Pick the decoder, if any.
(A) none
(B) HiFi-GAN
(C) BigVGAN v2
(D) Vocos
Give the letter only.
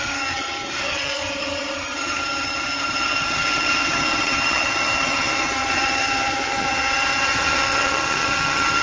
B